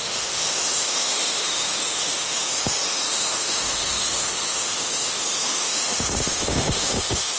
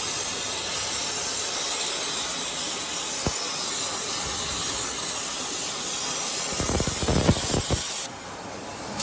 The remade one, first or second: first